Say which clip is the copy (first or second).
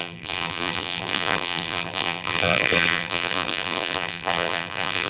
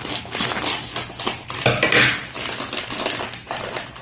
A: first